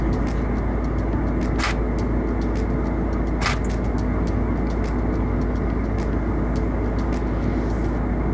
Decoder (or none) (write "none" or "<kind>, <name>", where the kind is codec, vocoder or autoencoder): none